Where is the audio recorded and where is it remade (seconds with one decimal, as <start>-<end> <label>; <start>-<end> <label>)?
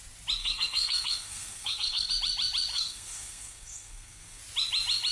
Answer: 0.0-0.4 recorded; 0.4-2.1 remade; 2.1-2.7 recorded; 2.7-4.4 remade; 4.4-5.1 recorded